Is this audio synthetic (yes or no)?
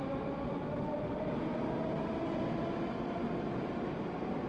no